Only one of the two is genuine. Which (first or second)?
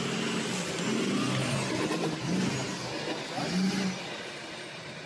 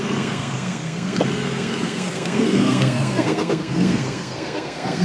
first